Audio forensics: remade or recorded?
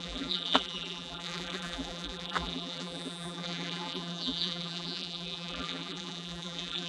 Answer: remade